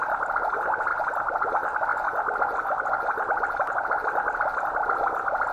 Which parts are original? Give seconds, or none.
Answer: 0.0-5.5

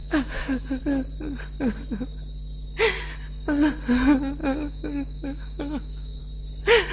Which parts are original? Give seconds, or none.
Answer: 0.8-4.4; 6.2-6.9

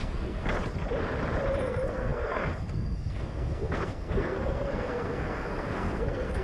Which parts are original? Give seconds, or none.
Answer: 0.5-1.6